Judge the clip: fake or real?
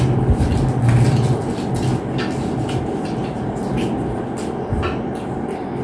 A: real